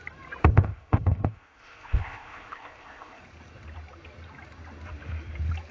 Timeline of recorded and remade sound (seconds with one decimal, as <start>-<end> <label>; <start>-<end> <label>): 0.0-0.5 recorded; 0.5-3.2 remade; 3.2-5.7 recorded